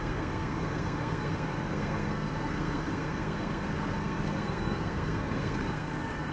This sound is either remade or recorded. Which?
remade